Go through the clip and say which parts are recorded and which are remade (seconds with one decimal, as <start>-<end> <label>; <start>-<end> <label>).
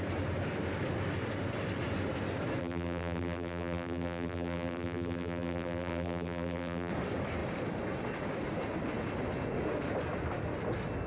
0.0-2.6 recorded; 2.6-6.9 remade; 6.9-11.1 recorded